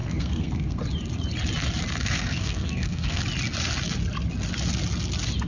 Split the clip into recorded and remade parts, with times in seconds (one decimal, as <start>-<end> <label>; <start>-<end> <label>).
0.0-0.8 remade; 0.8-2.0 recorded; 2.0-3.2 remade; 3.2-5.5 recorded